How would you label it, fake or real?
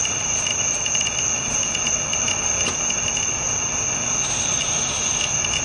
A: real